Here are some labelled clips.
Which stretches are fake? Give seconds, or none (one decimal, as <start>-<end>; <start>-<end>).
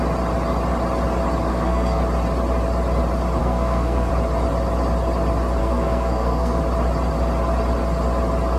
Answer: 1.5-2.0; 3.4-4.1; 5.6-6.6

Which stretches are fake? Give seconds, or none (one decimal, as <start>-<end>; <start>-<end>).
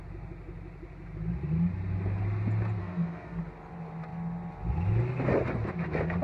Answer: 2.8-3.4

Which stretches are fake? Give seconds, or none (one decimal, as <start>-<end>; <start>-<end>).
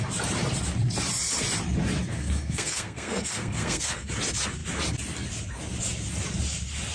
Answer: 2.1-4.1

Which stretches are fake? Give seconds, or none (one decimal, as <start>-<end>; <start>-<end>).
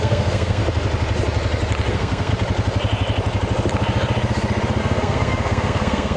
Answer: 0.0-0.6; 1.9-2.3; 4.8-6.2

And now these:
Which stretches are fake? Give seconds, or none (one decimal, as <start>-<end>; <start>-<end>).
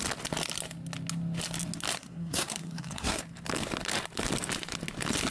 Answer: 2.0-3.2